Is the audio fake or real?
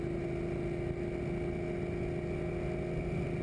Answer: real